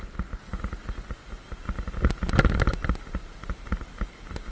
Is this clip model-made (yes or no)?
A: no